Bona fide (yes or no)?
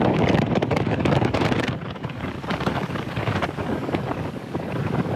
no